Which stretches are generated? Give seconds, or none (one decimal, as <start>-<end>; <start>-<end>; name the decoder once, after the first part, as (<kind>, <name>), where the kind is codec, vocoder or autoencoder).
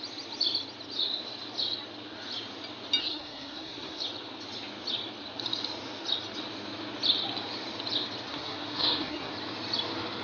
3.0-4.0 (codec, SNAC); 8.3-9.3